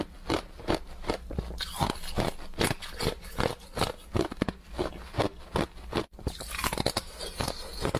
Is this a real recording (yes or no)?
yes